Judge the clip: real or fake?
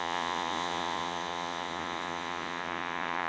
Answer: fake